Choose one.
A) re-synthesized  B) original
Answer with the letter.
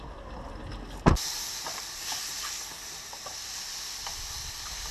B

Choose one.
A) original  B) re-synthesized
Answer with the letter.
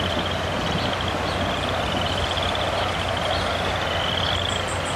A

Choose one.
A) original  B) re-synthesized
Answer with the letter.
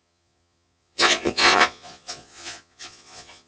B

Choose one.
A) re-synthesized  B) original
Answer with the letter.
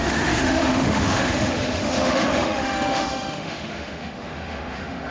A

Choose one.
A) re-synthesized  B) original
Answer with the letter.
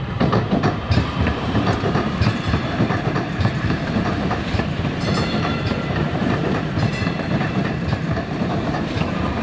A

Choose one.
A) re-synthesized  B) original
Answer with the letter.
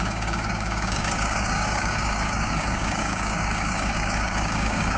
A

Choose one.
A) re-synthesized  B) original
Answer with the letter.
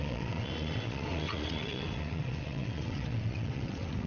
A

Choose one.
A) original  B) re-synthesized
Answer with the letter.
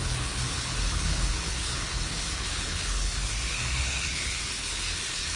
B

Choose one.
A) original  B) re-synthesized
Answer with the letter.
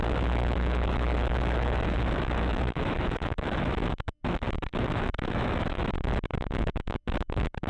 B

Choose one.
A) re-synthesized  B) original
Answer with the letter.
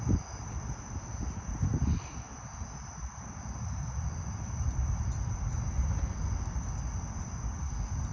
B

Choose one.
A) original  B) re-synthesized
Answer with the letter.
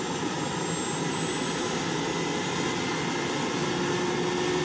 A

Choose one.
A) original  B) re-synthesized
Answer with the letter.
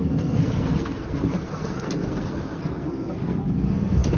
B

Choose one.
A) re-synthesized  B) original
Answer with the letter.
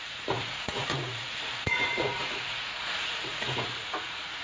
A